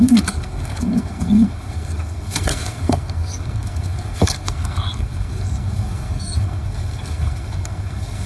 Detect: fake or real fake